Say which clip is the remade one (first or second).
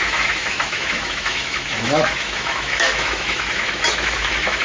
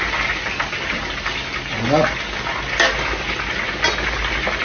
first